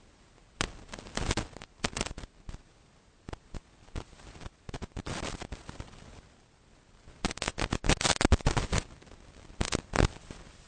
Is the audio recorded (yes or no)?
yes